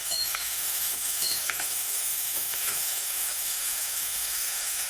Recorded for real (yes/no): no